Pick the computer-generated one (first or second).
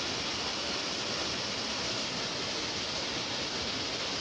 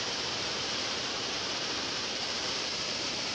second